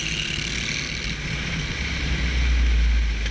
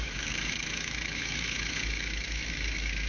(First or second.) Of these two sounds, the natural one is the first